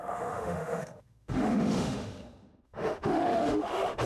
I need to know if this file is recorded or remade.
remade